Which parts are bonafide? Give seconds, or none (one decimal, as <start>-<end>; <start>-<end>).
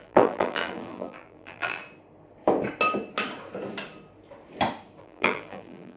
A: 1.8-5.0